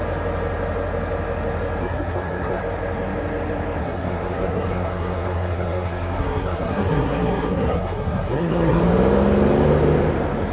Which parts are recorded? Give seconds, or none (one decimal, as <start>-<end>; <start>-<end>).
0.0-1.8; 2.6-3.8; 8.8-10.5